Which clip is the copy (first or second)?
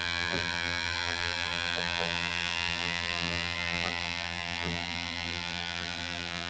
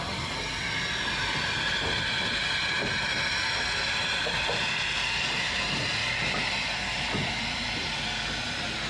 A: first